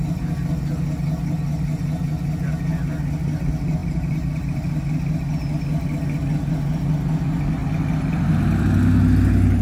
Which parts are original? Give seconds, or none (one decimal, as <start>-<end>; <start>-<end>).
0.0-3.8; 4.8-9.6

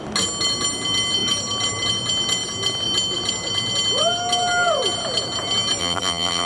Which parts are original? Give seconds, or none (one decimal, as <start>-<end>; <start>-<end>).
0.0-5.8

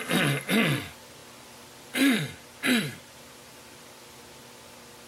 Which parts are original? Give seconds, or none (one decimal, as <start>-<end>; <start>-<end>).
0.0-1.2; 3.9-5.1